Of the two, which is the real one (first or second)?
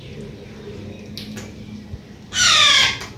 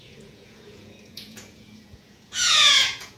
first